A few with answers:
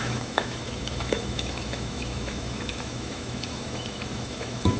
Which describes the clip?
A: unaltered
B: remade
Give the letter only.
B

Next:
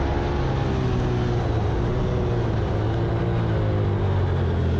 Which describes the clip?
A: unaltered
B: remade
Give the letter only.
A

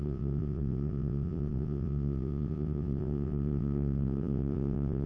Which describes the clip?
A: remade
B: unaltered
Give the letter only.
A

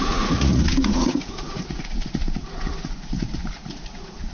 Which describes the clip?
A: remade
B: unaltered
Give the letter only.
A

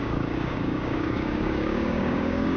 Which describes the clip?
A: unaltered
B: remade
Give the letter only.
B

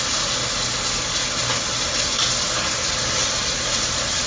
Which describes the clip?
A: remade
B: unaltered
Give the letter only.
B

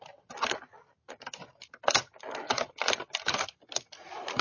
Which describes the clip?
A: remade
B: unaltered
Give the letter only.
B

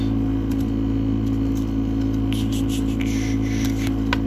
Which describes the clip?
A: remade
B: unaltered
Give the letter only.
B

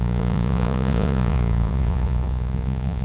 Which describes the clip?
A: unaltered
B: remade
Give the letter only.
B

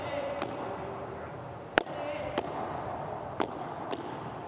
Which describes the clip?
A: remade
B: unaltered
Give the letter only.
B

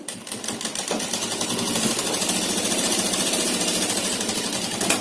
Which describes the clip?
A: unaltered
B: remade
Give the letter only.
A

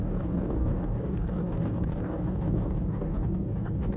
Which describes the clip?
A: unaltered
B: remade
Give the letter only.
B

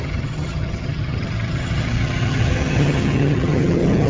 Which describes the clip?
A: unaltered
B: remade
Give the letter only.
B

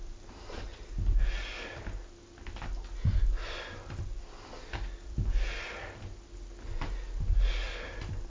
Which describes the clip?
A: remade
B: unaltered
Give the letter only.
B